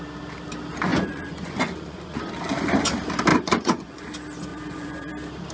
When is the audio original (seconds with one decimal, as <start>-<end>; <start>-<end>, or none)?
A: 0.0-0.9; 2.3-3.3; 4.1-4.5; 5.1-5.5